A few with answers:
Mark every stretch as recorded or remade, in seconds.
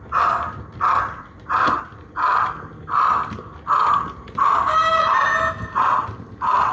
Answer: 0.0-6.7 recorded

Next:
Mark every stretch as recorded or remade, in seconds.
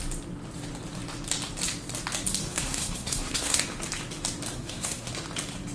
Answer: 0.0-2.4 recorded; 2.4-3.6 remade; 3.6-4.5 recorded; 4.5-5.1 remade; 5.1-5.7 recorded